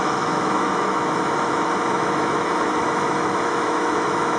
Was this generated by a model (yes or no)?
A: yes